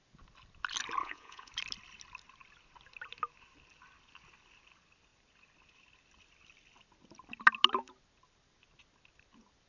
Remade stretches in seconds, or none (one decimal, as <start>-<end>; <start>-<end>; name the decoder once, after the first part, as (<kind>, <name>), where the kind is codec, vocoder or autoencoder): 1.0-1.5 (vocoder, Vocos)